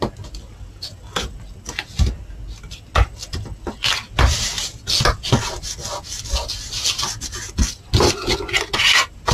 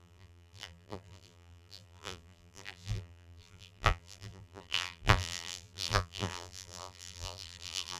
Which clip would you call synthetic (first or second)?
second